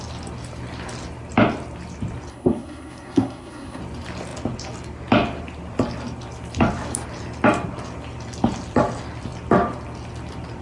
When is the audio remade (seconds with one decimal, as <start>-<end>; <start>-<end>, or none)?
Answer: 2.3-3.8